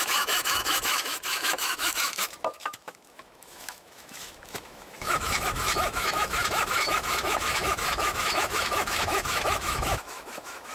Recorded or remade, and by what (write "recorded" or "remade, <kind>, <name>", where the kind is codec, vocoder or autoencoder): remade, autoencoder, DAC-VAE